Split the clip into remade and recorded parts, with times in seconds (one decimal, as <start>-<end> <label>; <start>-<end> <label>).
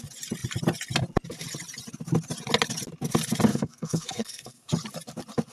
0.0-3.5 recorded; 3.5-4.7 remade; 4.7-5.5 recorded